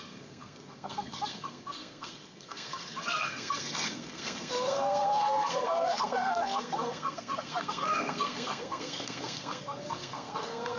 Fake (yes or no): yes